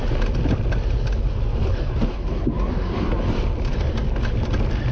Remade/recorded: recorded